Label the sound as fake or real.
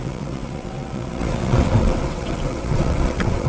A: fake